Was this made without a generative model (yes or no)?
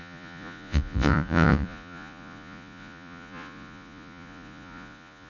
no